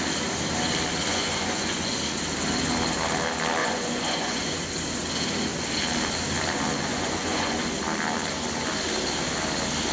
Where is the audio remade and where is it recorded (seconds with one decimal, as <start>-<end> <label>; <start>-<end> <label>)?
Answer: 0.0-1.1 recorded; 1.1-2.0 remade; 2.0-3.6 recorded; 3.6-4.7 remade; 4.7-6.9 recorded; 6.9-7.8 remade; 7.8-9.9 recorded